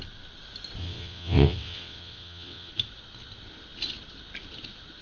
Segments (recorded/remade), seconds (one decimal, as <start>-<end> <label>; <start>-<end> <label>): 0.0-0.8 recorded; 0.8-2.7 remade; 2.7-5.0 recorded